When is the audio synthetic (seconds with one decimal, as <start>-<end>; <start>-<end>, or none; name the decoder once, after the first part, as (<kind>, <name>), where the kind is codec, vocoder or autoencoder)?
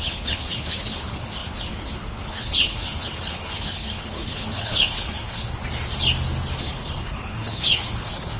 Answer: 0.0-5.6 (codec, HILCodec); 6.6-8.4